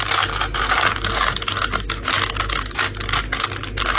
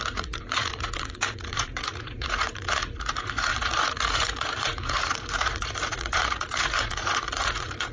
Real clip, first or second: first